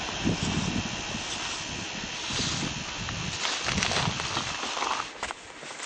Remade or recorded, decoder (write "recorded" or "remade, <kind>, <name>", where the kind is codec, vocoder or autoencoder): recorded